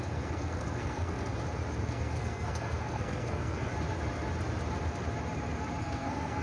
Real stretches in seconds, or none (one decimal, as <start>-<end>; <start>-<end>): 1.3-1.8; 3.7-5.8